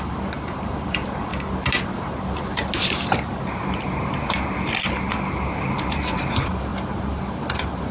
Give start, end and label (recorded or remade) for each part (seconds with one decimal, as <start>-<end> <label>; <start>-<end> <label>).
0.0-1.3 remade; 1.3-5.9 recorded; 5.9-7.9 remade